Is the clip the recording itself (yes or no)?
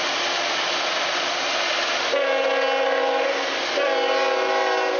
yes